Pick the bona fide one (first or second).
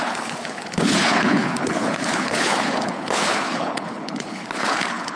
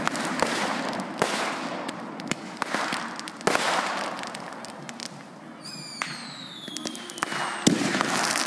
second